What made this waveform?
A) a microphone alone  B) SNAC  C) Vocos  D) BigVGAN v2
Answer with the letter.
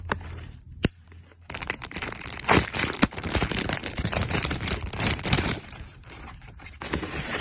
D